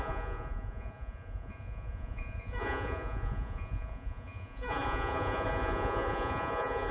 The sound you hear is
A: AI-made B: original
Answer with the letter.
A